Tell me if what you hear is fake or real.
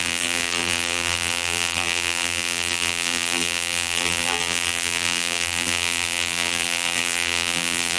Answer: fake